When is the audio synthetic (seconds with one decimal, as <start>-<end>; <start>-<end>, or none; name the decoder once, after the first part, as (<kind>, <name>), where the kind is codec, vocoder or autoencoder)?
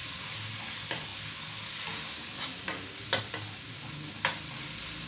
none